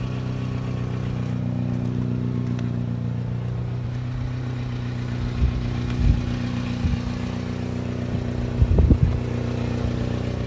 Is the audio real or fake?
real